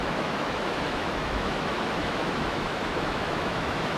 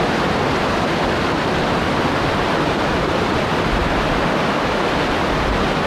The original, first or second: second